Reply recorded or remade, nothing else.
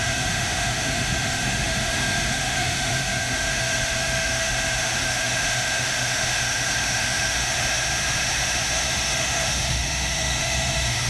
remade